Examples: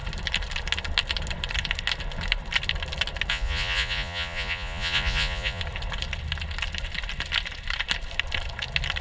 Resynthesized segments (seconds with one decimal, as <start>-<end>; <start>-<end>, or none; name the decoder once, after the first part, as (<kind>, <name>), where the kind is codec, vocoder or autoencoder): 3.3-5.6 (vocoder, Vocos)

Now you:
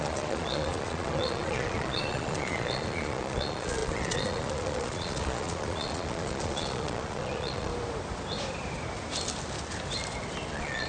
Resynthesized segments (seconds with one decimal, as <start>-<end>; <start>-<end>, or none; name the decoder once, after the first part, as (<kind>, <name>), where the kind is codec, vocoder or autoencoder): 0.0-7.7 (vocoder, Vocos); 10.5-10.9

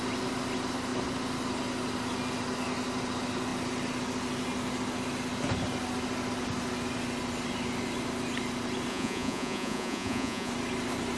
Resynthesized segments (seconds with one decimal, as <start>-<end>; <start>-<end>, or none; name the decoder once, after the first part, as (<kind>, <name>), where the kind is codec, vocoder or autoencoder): 8.9-10.5 (vocoder, Vocos)

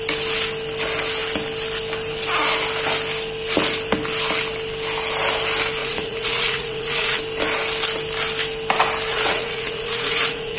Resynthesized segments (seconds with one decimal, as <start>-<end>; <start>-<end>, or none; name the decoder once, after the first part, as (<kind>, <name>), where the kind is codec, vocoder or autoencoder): 5.8-7.2 (vocoder, Vocos); 9.1-10.6

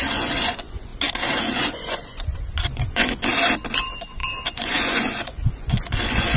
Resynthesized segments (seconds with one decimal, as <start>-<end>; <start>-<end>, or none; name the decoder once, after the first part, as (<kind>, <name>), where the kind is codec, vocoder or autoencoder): 0.0-0.9 (vocoder, Vocos); 1.4-3.3; 3.8-6.4

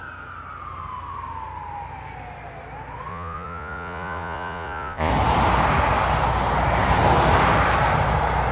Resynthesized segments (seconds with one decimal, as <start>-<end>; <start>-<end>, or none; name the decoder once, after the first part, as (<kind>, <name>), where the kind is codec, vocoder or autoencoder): 3.1-5.1 (vocoder, Vocos)

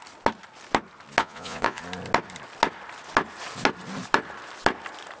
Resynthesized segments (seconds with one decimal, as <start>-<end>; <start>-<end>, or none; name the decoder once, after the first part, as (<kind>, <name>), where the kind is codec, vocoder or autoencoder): 1.2-1.8 (vocoder, Vocos)

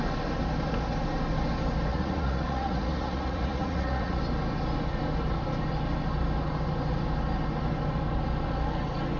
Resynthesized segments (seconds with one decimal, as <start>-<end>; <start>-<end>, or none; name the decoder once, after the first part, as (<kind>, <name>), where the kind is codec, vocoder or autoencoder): 1.9-4.2 (vocoder, Vocos)